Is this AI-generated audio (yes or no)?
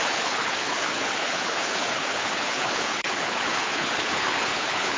yes